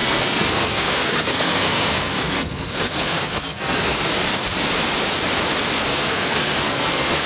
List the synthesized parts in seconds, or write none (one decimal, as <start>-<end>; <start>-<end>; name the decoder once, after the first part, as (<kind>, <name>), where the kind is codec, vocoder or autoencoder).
0.0-4.1 (codec, SNAC); 5.9-7.3